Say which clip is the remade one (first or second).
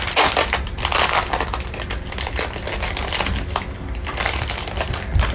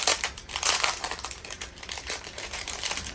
second